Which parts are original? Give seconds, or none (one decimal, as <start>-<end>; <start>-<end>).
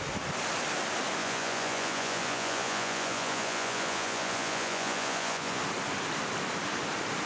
0.0-1.2; 5.6-7.3